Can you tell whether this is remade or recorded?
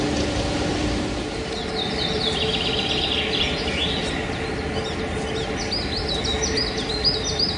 recorded